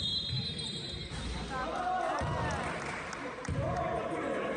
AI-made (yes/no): yes